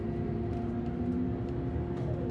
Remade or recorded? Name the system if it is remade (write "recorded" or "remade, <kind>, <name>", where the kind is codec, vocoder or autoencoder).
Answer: recorded